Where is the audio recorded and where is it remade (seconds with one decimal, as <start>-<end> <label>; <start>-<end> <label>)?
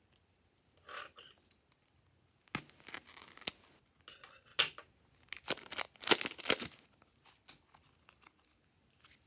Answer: 0.0-9.3 recorded